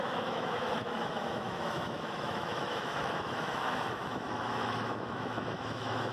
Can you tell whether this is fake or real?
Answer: fake